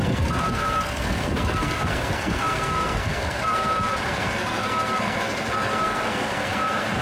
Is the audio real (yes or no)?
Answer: no